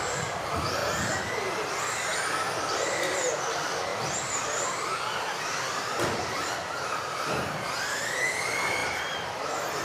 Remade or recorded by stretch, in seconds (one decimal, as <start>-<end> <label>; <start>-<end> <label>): 0.0-0.8 remade; 0.8-1.8 recorded; 1.8-9.8 remade